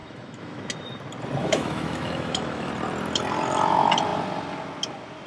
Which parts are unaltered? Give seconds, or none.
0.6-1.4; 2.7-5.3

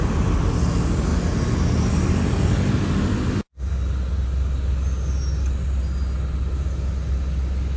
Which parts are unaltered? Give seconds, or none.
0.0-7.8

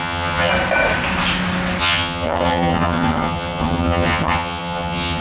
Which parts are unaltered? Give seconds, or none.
0.5-1.8